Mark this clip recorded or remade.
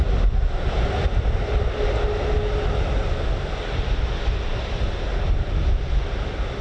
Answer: recorded